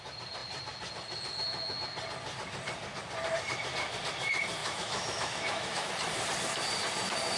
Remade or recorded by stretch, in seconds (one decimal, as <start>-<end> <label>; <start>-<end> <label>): 0.0-4.6 recorded; 4.6-5.9 remade; 5.9-7.4 recorded

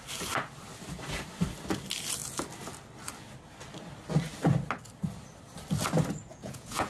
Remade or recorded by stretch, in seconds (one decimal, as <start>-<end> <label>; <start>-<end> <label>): 0.0-6.3 recorded; 6.3-6.9 remade

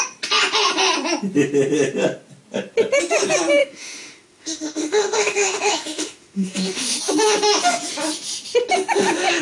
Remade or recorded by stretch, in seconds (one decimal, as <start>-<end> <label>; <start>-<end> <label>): 0.0-3.6 recorded; 3.6-7.0 remade; 7.0-9.4 recorded

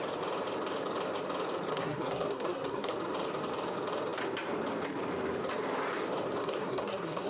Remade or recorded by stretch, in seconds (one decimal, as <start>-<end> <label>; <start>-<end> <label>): 0.0-1.7 recorded; 1.7-2.9 remade; 2.9-6.4 recorded; 6.4-7.3 remade

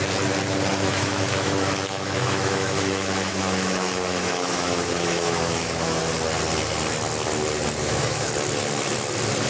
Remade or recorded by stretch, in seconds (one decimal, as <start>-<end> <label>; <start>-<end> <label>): 0.0-0.7 recorded; 0.7-6.0 remade; 6.0-7.8 recorded; 7.8-8.3 remade; 8.3-9.5 recorded

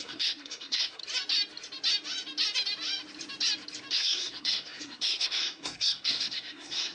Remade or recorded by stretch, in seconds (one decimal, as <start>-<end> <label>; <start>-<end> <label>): 0.0-1.0 remade; 1.0-3.9 recorded; 3.9-6.9 remade

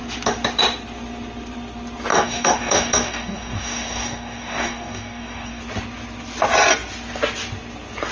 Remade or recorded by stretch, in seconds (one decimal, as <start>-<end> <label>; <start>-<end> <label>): 0.0-2.1 recorded; 2.1-5.6 remade; 5.6-8.1 recorded